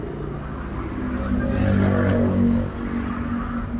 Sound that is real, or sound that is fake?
real